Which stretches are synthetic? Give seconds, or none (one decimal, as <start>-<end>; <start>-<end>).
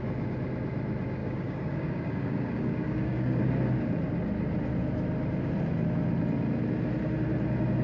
1.2-3.4